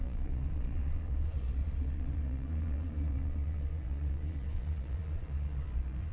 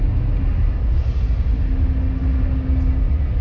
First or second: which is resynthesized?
first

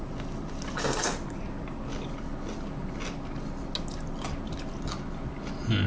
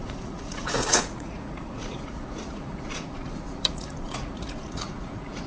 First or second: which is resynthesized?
second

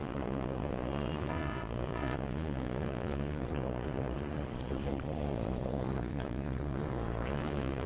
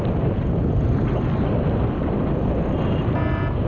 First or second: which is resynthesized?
first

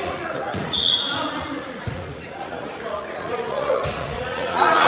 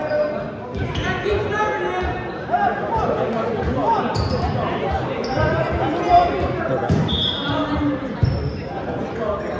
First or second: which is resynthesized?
first